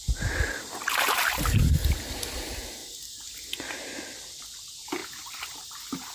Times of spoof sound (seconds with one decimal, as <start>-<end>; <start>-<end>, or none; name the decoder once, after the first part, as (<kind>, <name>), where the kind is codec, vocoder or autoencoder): none

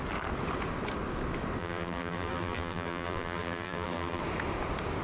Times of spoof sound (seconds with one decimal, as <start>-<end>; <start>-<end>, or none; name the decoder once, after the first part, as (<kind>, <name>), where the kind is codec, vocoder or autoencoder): 1.6-4.2 (vocoder, BigVGAN v2)